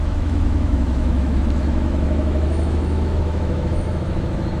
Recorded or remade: remade